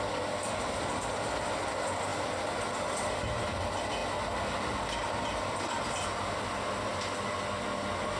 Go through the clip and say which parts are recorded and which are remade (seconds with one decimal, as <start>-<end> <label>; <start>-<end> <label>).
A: 0.0-8.2 recorded